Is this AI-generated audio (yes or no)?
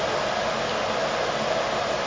no